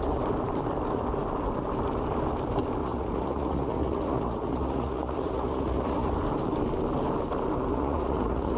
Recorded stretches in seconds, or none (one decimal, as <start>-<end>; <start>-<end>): 0.0-2.8; 6.1-7.7